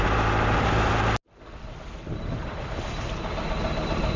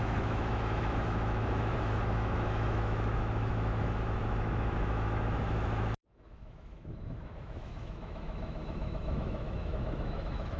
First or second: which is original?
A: first